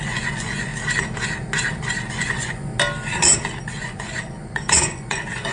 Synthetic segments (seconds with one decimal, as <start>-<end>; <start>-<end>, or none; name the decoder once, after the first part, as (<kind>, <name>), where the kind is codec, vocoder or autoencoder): 0.0-0.7 (vocoder, Vocos); 2.1-2.7; 3.8-5.5